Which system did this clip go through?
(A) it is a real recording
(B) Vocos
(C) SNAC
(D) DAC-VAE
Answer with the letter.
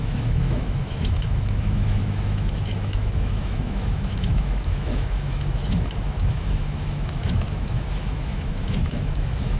D